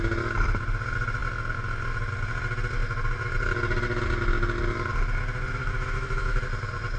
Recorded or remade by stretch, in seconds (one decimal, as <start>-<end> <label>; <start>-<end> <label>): 0.0-5.6 recorded; 5.6-6.4 remade; 6.4-7.0 recorded